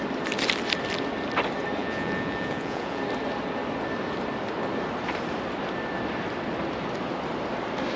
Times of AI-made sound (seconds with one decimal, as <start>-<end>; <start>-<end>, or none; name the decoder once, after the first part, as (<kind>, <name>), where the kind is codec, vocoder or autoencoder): 1.8-3.0 (vocoder, Vocos)